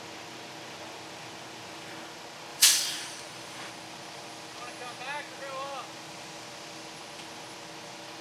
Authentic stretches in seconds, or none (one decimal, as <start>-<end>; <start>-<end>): 0.0-2.5; 3.7-8.2